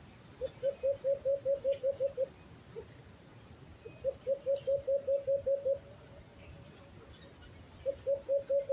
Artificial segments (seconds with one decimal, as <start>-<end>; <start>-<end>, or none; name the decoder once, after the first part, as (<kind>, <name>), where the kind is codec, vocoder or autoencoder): none